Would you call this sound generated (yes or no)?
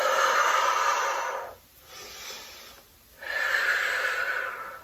no